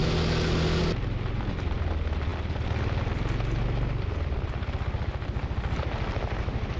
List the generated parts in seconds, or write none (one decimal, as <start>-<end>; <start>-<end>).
none